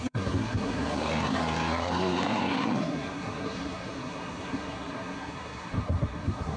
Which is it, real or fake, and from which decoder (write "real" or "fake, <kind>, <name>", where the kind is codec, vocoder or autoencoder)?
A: fake, codec, SNAC